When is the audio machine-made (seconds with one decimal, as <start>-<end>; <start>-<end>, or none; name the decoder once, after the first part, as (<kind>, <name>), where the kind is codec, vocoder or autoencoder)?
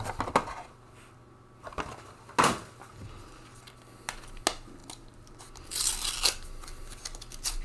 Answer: none